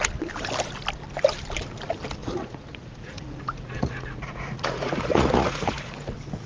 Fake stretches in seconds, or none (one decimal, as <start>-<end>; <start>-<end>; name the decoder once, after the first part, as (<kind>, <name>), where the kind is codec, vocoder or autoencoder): 2.2-6.1 (vocoder, Vocos)